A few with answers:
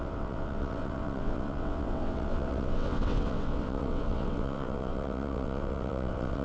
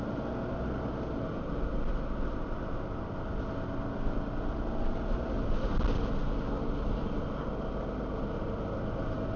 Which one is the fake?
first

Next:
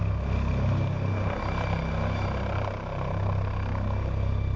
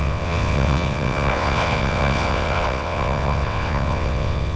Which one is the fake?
second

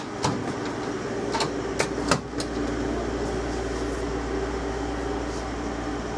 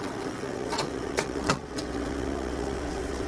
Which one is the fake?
second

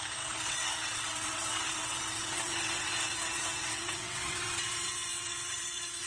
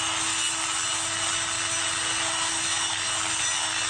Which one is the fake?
first